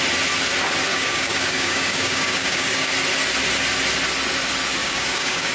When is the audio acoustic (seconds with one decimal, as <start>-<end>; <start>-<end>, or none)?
0.0-0.9; 2.9-4.8

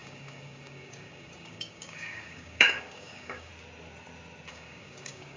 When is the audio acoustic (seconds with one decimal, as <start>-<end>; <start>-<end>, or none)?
3.5-4.5

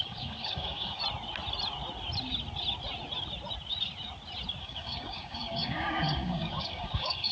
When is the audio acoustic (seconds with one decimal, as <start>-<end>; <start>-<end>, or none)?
1.0-4.6

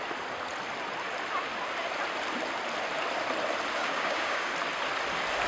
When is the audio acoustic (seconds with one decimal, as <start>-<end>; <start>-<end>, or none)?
0.0-3.8; 4.5-5.5

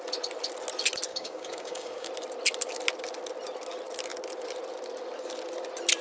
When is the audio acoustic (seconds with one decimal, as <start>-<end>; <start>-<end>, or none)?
0.0-1.1; 2.1-6.0